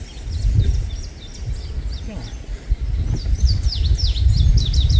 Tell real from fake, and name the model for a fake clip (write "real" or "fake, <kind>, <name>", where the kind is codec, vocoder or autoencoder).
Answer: real